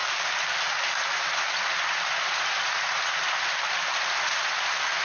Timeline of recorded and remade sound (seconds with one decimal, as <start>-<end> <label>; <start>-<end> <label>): 0.0-5.0 recorded